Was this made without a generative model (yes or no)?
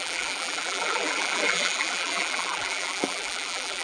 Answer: no